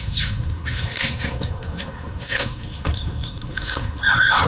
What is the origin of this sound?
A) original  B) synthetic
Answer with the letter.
B